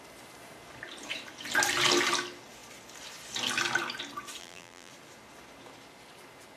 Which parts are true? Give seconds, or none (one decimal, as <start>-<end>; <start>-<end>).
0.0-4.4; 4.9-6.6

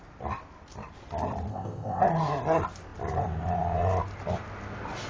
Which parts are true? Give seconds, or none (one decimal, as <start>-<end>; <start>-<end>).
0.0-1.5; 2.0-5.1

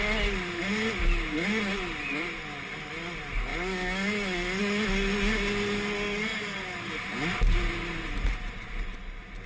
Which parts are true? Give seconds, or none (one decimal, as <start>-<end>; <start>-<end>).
0.0-9.5

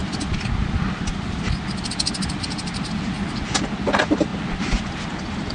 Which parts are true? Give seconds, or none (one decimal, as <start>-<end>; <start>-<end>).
0.0-5.5

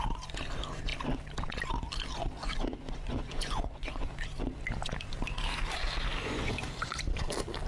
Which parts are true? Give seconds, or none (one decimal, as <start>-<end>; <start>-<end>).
0.0-2.4; 4.1-6.2; 7.0-7.7